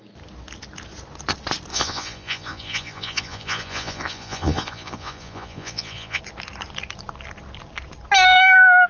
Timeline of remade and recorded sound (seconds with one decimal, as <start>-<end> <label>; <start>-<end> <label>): 0.0-1.7 recorded; 1.7-6.2 remade; 6.2-8.9 recorded